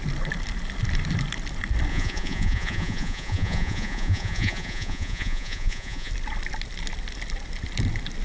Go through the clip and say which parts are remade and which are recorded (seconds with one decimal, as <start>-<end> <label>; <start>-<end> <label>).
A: 0.0-1.9 recorded; 1.9-6.1 remade; 6.1-8.2 recorded